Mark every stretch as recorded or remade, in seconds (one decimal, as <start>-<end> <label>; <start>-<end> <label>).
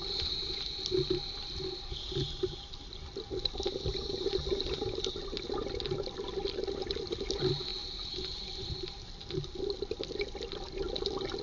0.0-11.4 recorded